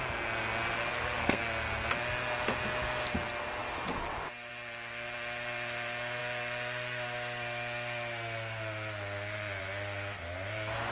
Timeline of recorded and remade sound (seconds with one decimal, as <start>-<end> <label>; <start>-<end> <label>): 0.0-0.9 recorded; 0.9-1.4 remade; 1.4-10.9 recorded